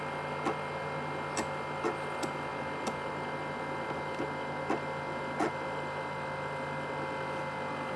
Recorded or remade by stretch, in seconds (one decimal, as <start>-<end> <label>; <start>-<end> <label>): 0.0-8.0 recorded